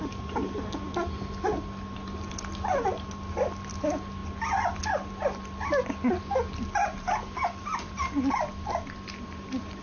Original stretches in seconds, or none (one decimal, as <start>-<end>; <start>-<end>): 0.0-6.8; 8.3-9.8